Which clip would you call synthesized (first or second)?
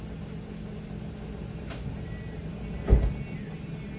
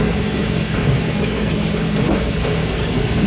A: second